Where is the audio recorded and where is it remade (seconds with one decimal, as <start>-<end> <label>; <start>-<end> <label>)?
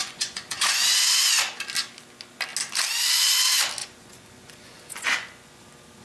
0.0-1.3 remade; 1.3-3.8 recorded; 3.8-5.6 remade; 5.6-6.0 recorded